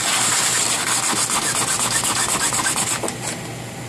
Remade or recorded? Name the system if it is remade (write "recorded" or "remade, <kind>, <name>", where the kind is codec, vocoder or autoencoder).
recorded